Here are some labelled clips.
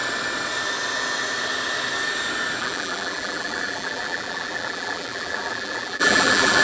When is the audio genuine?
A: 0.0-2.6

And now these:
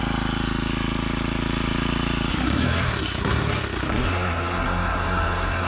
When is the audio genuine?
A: 0.0-2.3

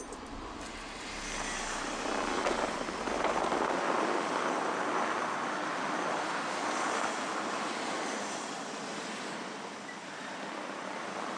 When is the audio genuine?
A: 0.0-11.4

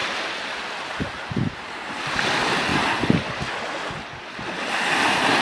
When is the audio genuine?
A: 0.0-5.4

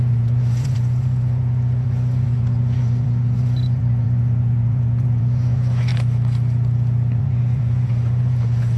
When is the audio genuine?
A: 5.9-7.2

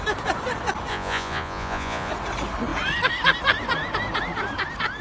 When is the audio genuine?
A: 0.0-0.9; 2.1-5.0

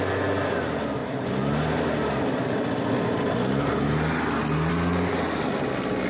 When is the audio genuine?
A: 0.0-6.1

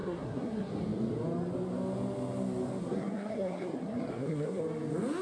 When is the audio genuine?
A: 0.7-2.8; 4.6-5.2